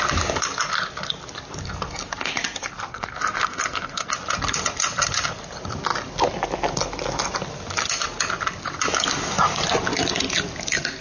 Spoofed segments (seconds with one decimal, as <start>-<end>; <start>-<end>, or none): 2.9-4.1